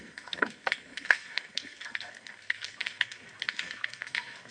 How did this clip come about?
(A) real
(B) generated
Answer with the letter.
B